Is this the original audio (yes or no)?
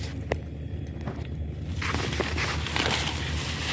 yes